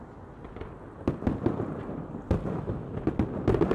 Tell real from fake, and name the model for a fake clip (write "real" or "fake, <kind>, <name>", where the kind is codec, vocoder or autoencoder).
real